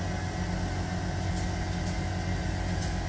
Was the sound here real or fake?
real